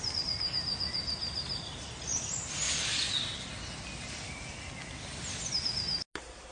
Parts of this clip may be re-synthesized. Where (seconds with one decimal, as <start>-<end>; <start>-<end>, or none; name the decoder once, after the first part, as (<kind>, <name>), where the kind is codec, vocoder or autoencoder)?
none